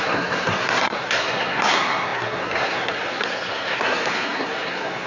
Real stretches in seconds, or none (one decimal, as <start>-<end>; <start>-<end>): none